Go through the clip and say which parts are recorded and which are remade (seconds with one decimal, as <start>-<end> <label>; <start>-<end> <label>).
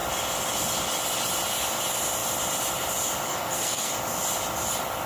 0.0-3.3 recorded; 3.3-3.9 remade; 3.9-5.1 recorded